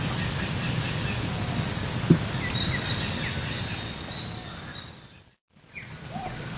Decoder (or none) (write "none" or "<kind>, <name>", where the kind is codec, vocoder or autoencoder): none